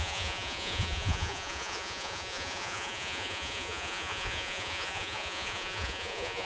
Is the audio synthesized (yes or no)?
yes